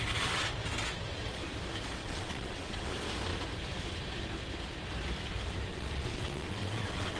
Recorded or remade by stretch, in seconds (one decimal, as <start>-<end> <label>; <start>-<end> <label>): 0.0-2.0 recorded; 2.0-2.9 remade; 2.9-5.7 recorded; 5.7-7.2 remade